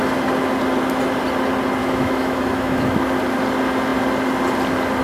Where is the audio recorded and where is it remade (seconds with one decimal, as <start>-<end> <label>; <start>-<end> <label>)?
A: 0.0-1.8 recorded; 1.8-3.0 remade; 3.0-5.0 recorded